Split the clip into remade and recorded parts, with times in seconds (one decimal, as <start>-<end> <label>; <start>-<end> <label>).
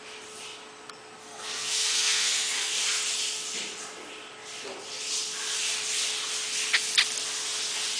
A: 0.0-1.2 recorded; 1.2-2.7 remade; 2.7-8.0 recorded